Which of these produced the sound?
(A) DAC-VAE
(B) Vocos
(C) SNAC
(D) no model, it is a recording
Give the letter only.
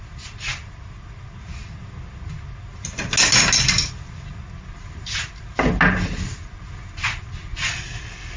D